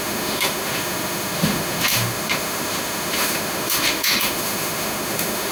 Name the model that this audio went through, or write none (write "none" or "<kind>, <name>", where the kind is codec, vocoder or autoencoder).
autoencoder, DAC-VAE